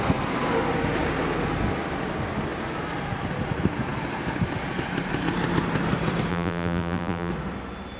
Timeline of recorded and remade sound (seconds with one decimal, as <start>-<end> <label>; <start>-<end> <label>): 0.0-6.3 recorded; 6.3-7.3 remade; 7.3-8.0 recorded